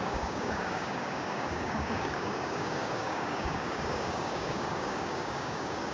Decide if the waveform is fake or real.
fake